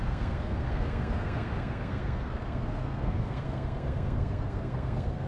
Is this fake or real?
fake